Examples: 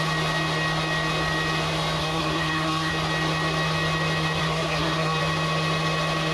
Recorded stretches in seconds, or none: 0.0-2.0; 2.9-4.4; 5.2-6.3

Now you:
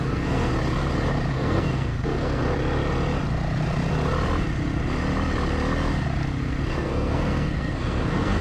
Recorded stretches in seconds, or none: 0.5-1.3; 2.4-6.4

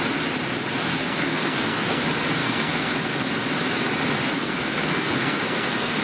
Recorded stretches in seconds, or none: 0.0-0.9; 2.0-2.4; 3.3-4.3